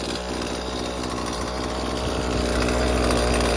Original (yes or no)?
yes